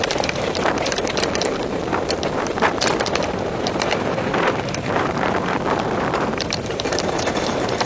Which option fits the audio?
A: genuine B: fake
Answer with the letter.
B